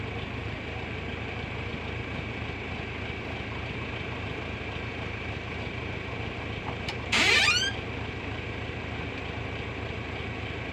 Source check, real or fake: fake